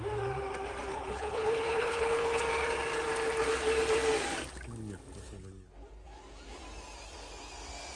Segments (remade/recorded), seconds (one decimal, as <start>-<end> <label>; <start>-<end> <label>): 0.0-0.9 recorded; 0.9-2.4 remade; 2.4-8.0 recorded